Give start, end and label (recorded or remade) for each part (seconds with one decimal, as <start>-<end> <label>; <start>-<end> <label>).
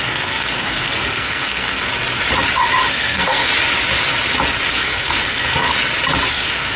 0.0-1.9 remade; 1.9-2.9 recorded; 2.9-3.5 remade; 3.5-4.7 recorded; 4.7-5.7 remade; 5.7-6.3 recorded; 6.3-6.8 remade